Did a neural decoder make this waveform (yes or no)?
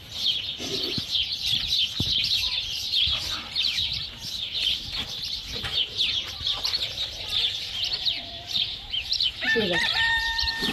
yes